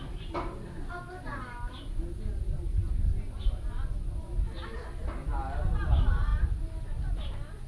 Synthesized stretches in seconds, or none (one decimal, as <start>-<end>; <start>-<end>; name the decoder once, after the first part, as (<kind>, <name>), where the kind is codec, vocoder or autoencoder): none

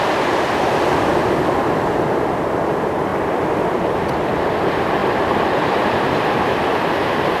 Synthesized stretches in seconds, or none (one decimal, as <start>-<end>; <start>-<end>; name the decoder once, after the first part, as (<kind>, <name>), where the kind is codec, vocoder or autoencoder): none

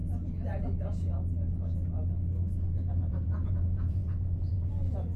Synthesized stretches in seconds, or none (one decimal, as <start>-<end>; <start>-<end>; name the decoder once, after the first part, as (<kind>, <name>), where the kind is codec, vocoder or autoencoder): 3.1-5.2 (vocoder, Vocos)

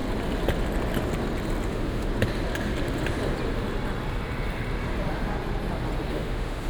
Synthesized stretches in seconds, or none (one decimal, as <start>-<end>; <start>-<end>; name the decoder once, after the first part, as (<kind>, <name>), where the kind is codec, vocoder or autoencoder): 1.7-2.1 (autoencoder, DAC-VAE); 6.1-6.7

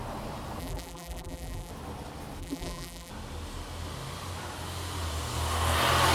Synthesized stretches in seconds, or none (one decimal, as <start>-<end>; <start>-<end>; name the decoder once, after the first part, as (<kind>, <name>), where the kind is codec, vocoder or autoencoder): 0.6-1.7 (vocoder, BigVGAN v2); 2.4-3.1

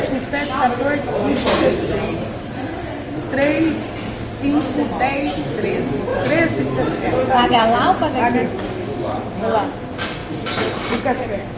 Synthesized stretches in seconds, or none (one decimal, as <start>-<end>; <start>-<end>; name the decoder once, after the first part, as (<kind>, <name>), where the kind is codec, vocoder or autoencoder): none

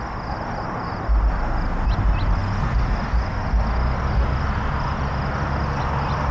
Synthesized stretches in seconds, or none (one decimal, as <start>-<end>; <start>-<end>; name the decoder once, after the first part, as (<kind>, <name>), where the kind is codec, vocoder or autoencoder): none

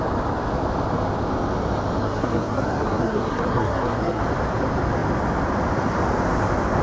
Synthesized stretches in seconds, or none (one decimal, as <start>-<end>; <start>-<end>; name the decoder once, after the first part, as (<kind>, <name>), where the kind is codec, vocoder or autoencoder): 2.0-4.2 (codec, SNAC)